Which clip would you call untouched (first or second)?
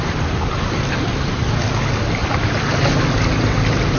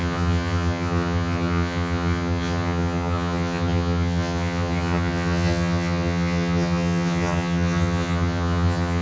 first